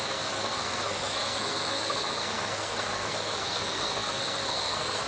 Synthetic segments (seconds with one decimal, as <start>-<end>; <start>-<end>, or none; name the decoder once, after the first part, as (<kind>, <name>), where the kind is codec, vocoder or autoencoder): 0.0-5.1 (codec, SNAC)